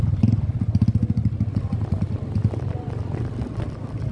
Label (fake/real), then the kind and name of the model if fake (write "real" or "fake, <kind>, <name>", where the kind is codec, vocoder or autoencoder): real